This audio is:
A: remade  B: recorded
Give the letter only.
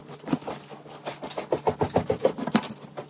B